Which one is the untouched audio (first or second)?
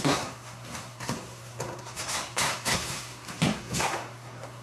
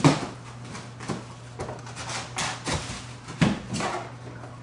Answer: second